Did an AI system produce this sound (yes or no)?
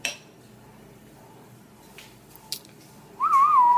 no